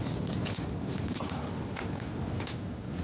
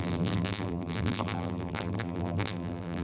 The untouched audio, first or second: first